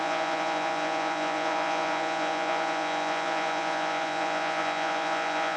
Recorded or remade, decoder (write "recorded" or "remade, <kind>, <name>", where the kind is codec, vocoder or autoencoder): remade, vocoder, Vocos